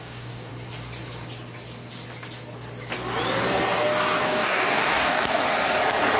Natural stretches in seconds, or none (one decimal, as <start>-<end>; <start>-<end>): 0.5-4.2; 5.4-6.2